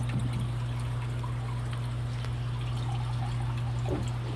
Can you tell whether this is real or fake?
real